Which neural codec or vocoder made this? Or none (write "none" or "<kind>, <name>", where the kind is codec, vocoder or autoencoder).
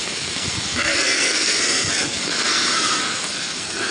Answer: codec, SNAC